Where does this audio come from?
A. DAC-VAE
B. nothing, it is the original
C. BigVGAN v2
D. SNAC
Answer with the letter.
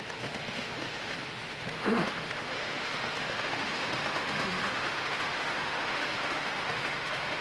A